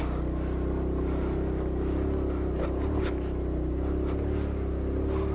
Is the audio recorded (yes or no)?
yes